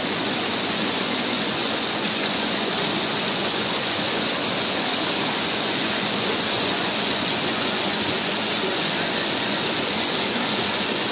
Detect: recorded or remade remade